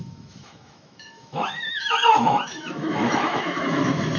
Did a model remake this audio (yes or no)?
yes